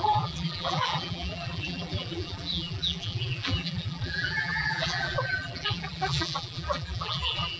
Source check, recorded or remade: remade